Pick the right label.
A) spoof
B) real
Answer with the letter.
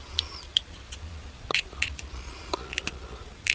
A